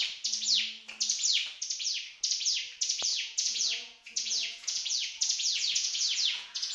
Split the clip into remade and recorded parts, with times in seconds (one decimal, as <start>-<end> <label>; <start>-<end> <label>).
0.0-3.1 recorded; 3.1-6.7 remade